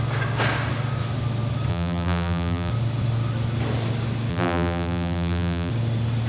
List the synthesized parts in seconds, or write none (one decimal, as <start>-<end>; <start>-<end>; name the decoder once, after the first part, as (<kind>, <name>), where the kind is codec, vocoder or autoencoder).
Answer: 1.7-2.7 (vocoder, BigVGAN v2); 4.3-5.7